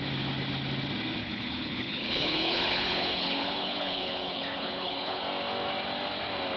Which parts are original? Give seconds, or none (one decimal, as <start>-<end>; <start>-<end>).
0.0-1.2; 5.2-6.6